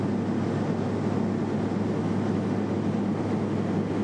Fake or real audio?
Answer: real